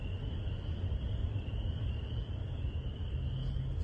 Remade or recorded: recorded